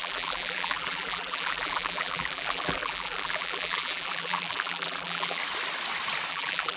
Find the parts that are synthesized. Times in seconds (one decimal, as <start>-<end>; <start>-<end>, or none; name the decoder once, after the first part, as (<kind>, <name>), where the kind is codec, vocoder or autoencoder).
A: 0.0-5.4 (vocoder, BigVGAN v2); 6.3-6.8